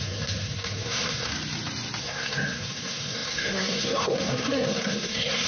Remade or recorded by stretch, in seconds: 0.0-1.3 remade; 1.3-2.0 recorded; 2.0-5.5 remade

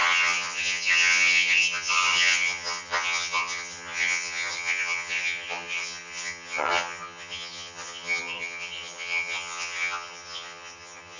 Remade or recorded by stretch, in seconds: 0.0-11.2 remade